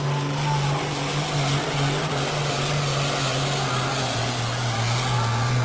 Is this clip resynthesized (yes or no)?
no